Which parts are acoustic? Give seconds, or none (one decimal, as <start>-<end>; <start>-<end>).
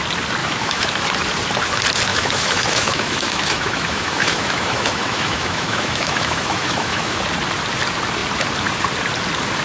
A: 0.0-0.4; 1.0-2.1; 7.2-9.6